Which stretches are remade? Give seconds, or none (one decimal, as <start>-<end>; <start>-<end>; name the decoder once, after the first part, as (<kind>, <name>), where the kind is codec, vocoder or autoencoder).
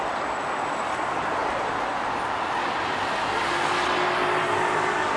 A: none